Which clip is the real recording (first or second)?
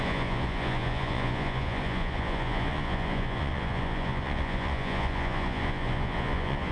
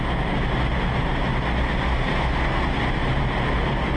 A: second